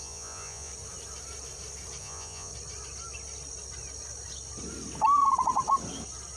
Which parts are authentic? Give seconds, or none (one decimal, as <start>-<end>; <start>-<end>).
0.7-2.0; 2.5-6.4